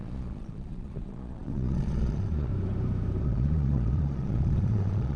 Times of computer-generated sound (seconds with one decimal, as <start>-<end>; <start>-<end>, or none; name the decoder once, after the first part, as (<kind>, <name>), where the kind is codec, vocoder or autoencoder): 0.0-2.5 (vocoder, Vocos); 3.2-5.2